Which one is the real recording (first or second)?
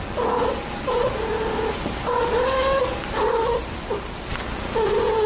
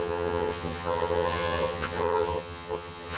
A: first